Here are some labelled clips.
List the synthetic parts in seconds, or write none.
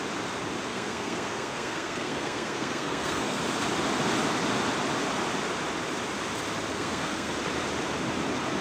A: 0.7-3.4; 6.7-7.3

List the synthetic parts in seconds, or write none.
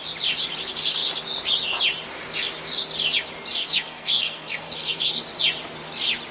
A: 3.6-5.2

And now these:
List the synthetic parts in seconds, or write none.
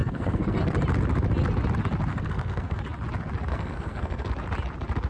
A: 0.0-0.6; 2.1-2.8; 3.5-4.3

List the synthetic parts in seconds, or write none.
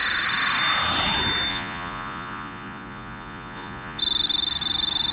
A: 1.5-4.0